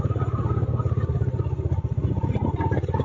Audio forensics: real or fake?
real